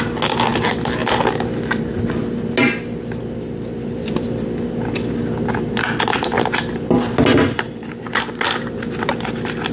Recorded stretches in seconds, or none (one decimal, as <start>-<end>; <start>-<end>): 0.0-9.7